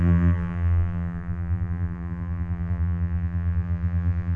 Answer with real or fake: fake